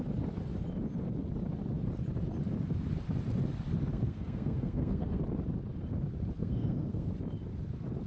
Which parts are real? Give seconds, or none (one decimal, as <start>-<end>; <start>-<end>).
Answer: 0.0-3.9; 5.2-6.4; 7.1-8.1